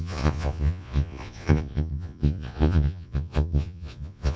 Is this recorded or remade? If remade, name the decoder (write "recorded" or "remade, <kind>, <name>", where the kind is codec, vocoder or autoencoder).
remade, vocoder, Vocos